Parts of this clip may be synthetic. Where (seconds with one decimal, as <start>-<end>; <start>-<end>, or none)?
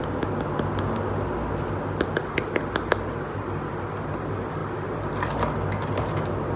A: 4.6-6.1